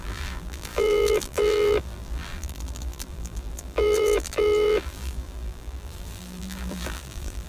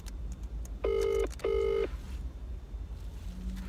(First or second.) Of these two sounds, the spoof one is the first